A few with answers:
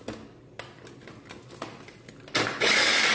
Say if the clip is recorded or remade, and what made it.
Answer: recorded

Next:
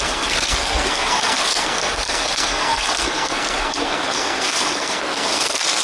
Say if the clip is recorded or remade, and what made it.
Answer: remade, codec, SNAC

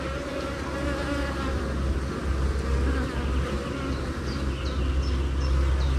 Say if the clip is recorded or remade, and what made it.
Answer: recorded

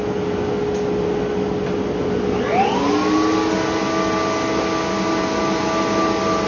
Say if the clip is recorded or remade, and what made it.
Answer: recorded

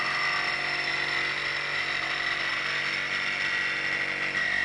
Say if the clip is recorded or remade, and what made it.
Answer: recorded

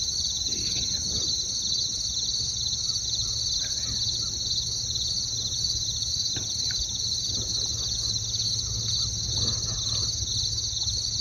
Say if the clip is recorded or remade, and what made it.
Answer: recorded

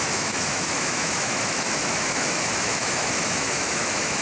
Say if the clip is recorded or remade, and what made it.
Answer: remade, autoencoder, DAC-VAE